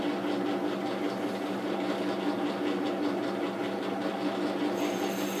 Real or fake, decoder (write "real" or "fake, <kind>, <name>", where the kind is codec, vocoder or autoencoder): real